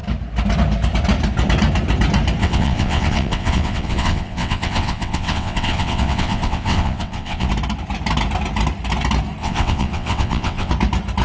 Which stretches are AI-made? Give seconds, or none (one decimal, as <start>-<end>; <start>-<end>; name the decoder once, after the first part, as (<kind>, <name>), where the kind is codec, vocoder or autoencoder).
2.4-7.5 (vocoder, WaveNeXt); 9.4-10.7